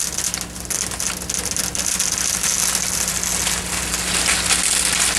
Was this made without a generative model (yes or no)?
yes